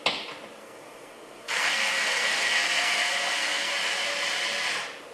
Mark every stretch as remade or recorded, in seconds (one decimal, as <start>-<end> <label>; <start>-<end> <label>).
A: 0.0-0.6 recorded; 0.6-3.7 remade; 3.7-5.1 recorded